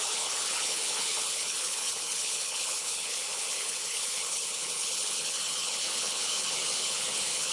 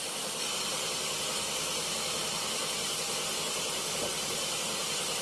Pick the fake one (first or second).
first